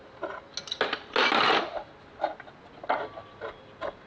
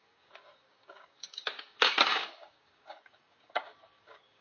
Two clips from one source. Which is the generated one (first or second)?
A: second